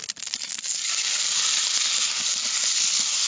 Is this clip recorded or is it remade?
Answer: recorded